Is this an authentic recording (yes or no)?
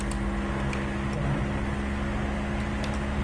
yes